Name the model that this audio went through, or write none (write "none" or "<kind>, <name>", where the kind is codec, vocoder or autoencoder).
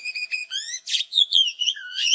vocoder, Vocos